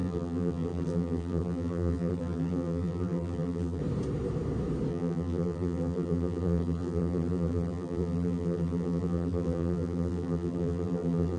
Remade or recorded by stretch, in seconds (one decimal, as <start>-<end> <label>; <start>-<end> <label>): 0.0-3.8 remade; 3.8-4.9 recorded; 4.9-11.4 remade